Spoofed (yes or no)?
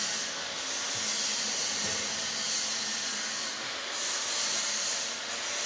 no